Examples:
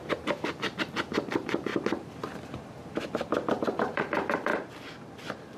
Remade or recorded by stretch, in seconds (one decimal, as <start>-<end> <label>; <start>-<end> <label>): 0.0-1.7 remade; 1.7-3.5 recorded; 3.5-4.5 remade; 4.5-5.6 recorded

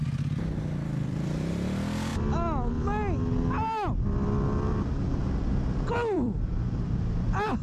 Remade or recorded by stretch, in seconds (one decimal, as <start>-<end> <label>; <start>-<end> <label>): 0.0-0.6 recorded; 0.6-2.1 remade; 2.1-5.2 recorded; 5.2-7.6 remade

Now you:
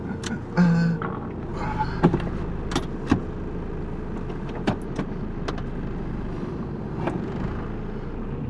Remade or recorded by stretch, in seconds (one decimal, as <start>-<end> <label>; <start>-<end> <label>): 0.0-8.5 recorded

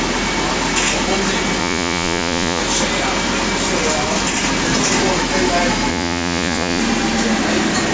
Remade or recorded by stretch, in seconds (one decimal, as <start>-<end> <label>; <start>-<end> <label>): 0.0-1.6 recorded; 1.6-2.6 remade; 2.6-5.9 recorded; 5.9-6.8 remade; 6.8-7.9 recorded